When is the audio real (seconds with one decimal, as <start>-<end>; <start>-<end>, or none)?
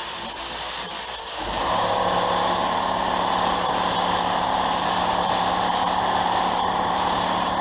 0.0-7.6